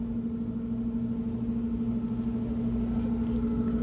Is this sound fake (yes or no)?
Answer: no